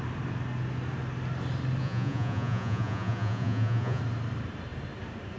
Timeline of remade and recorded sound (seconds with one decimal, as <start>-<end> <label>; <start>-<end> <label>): 0.0-1.8 recorded; 1.8-4.0 remade; 4.0-5.4 recorded